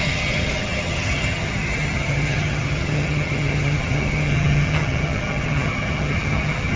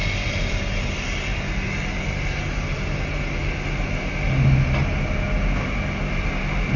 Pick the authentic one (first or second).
second